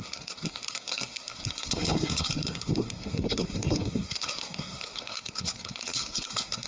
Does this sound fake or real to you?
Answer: fake